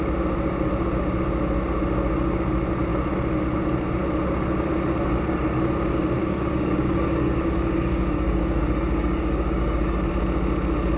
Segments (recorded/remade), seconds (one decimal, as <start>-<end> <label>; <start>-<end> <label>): 0.0-6.2 recorded; 6.2-10.1 remade; 10.1-11.0 recorded